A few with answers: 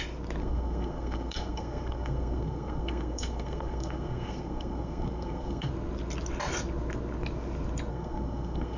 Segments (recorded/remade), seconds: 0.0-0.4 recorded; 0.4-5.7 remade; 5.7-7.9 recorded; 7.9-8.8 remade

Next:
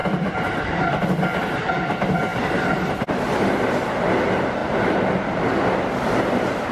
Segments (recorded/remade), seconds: 0.0-1.0 remade; 1.0-2.3 recorded; 2.3-2.9 remade; 2.9-6.7 recorded

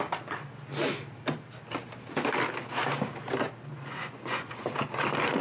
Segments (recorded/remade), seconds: 0.0-3.7 recorded; 3.7-4.5 remade; 4.5-5.4 recorded

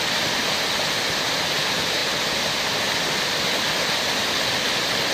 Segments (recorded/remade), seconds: 0.0-5.1 recorded

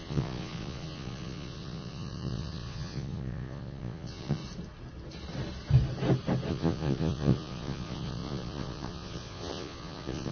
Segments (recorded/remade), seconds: 0.0-4.4 remade; 4.4-6.5 recorded; 6.5-10.3 remade

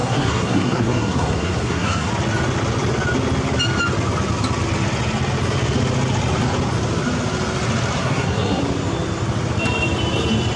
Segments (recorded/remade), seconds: 0.0-2.1 remade; 2.1-8.0 recorded; 8.0-8.6 remade; 8.6-10.6 recorded

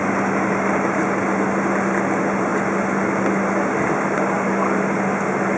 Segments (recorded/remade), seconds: 0.0-5.6 recorded